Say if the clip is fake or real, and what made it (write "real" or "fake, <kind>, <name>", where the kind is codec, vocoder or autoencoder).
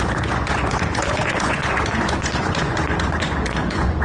fake, vocoder, Vocos